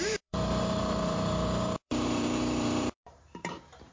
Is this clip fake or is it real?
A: fake